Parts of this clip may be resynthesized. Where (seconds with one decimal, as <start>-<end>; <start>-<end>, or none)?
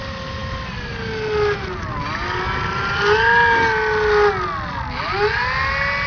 none